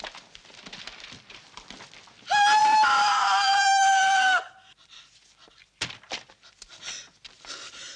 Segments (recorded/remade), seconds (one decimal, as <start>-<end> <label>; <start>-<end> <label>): 0.0-2.6 recorded; 2.6-6.3 remade; 6.3-8.0 recorded